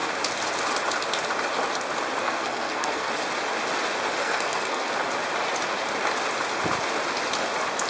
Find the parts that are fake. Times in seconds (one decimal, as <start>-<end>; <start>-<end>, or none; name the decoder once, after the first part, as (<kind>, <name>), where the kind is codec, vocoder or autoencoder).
2.2-3.1 (codec, SNAC); 4.2-4.9